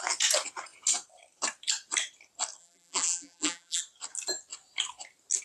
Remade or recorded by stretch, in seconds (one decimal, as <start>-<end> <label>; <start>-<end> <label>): 0.0-2.6 recorded; 2.6-3.8 remade; 3.8-5.4 recorded